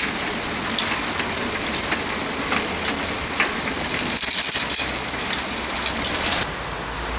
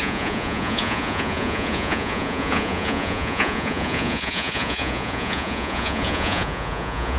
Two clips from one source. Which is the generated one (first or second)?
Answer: second